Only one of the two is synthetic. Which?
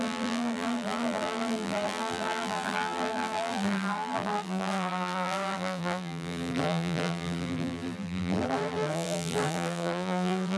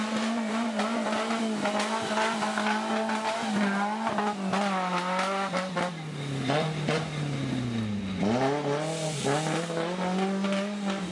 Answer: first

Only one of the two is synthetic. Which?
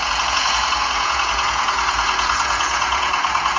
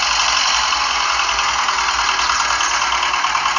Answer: first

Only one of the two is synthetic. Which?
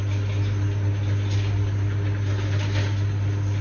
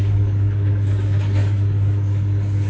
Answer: second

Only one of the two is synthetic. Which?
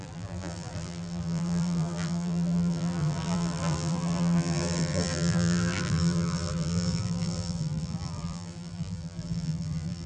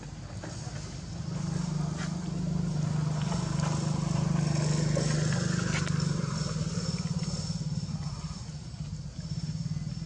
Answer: first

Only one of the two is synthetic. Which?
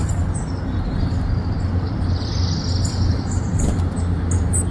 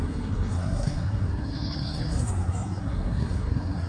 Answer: second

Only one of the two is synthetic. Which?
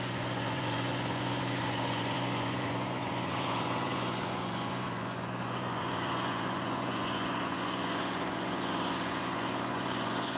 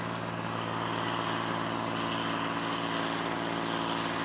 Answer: first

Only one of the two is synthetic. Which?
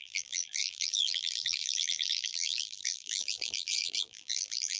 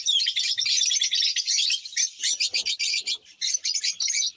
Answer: first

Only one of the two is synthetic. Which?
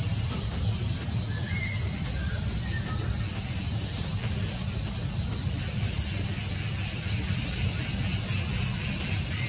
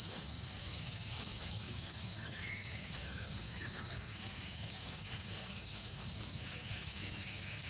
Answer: second